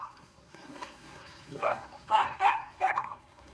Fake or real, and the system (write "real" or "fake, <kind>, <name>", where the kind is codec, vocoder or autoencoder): fake, codec, SNAC